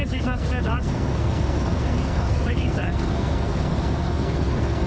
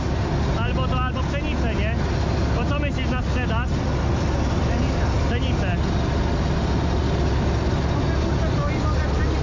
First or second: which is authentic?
second